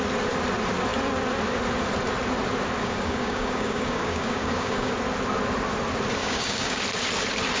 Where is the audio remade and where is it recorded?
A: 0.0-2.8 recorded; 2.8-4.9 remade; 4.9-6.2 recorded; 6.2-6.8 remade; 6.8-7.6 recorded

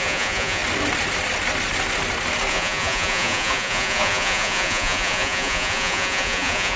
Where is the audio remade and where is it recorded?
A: 0.0-0.6 remade; 0.6-2.5 recorded; 2.5-6.8 remade

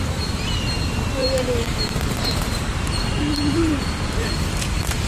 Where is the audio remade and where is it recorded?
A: 0.0-1.2 recorded; 1.2-3.7 remade; 3.7-5.1 recorded

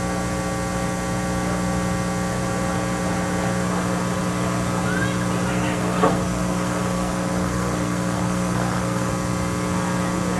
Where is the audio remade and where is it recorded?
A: 0.0-5.5 recorded; 5.5-9.1 remade; 9.1-10.4 recorded

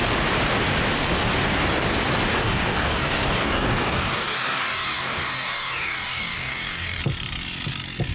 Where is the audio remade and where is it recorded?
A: 0.0-2.4 recorded; 2.4-7.0 remade; 7.0-8.1 recorded

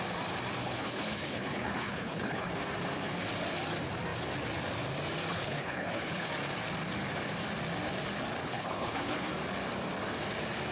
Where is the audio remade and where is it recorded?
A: 0.0-0.6 recorded; 0.6-2.5 remade; 2.5-5.3 recorded; 5.3-6.3 remade; 6.3-8.4 recorded; 8.4-9.3 remade; 9.3-10.7 recorded